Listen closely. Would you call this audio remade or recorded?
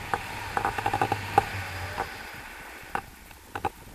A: recorded